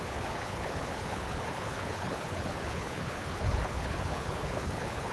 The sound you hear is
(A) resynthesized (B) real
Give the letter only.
A